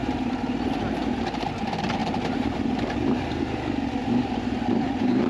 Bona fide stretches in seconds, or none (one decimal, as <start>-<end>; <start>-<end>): 0.7-2.0; 2.8-4.0